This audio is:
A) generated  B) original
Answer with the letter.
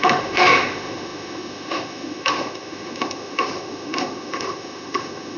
A